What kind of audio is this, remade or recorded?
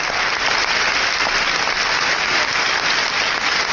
recorded